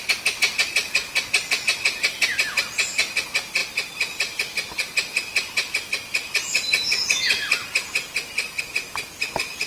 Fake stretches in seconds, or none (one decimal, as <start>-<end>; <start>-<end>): none